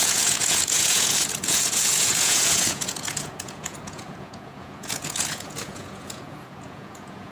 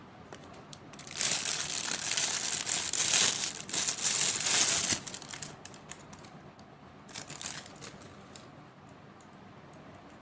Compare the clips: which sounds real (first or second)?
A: second